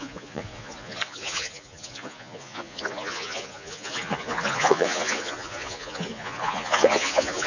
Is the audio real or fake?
fake